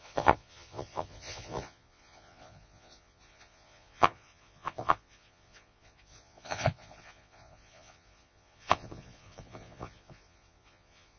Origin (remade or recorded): remade